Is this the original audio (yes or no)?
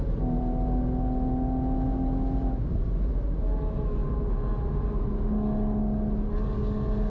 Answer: yes